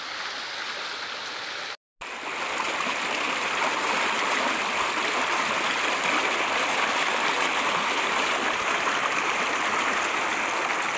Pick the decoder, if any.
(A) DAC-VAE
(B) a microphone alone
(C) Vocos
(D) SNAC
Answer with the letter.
B